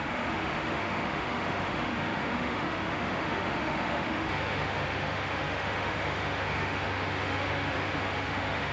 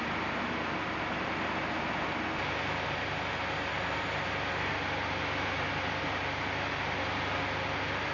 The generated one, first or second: first